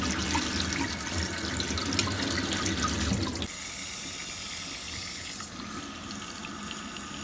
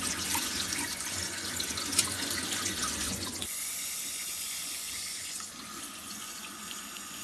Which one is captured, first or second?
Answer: first